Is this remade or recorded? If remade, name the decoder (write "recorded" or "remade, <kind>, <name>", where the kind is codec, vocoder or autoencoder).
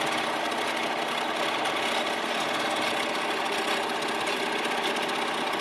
recorded